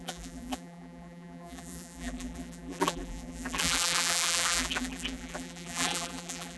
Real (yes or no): no